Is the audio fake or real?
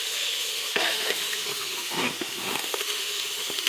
fake